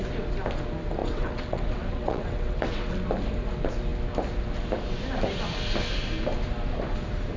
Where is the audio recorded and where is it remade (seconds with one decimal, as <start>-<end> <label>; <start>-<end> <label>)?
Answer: 0.0-1.0 recorded; 1.0-2.9 remade; 2.9-7.4 recorded